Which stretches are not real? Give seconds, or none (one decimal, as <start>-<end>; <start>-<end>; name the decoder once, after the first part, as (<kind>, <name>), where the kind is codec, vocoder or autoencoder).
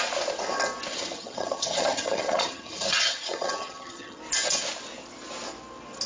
0.9-4.2 (vocoder, HiFi-GAN)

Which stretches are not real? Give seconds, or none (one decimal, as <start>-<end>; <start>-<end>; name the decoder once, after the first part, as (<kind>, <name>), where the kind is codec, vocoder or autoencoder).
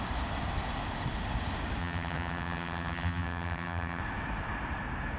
1.8-4.0 (vocoder, HiFi-GAN)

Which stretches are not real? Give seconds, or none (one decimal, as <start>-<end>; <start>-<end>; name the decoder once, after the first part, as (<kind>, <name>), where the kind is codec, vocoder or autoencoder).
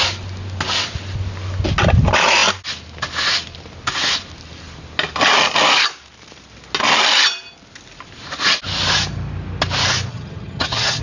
10.1-11.0 (vocoder, HiFi-GAN)